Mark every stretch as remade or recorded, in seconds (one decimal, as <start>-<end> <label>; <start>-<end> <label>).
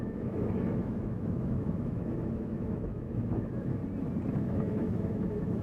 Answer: 0.0-3.8 remade; 3.8-4.4 recorded; 4.4-5.6 remade